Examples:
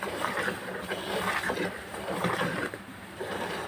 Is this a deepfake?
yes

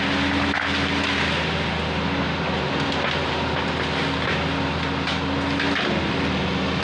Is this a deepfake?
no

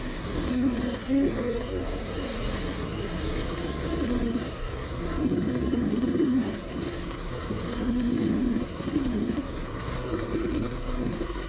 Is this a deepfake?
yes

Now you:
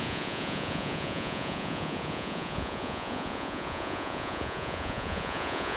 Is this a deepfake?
yes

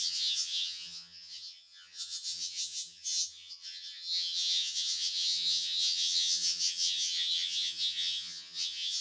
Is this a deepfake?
yes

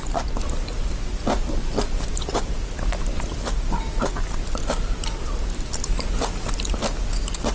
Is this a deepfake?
no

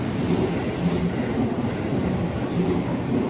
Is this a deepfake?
no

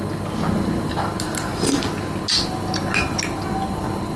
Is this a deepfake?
no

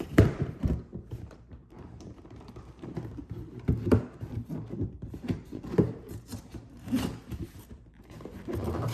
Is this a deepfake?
yes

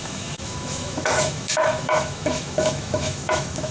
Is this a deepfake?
yes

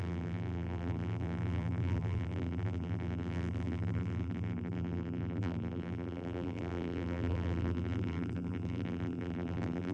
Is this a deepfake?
yes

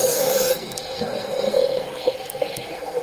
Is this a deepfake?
yes